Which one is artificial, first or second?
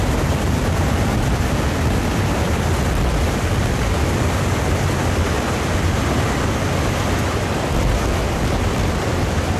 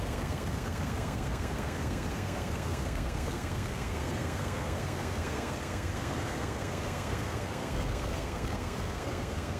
second